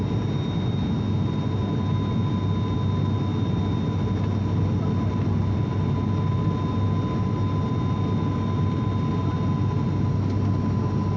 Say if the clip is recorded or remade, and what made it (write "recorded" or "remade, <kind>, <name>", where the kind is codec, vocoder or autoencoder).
recorded